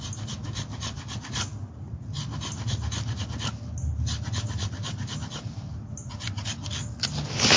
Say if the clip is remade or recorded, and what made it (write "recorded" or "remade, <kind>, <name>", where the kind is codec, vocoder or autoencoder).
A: recorded